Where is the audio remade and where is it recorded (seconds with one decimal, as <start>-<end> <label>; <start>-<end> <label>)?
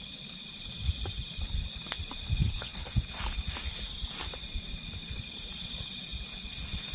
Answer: 0.0-2.4 recorded; 2.4-2.9 remade; 2.9-6.9 recorded